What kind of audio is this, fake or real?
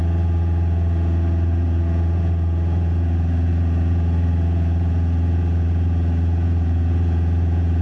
fake